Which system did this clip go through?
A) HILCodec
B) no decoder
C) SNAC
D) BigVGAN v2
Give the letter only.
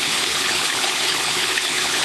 A